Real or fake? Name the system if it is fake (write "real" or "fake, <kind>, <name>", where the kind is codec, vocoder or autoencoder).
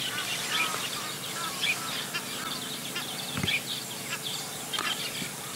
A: real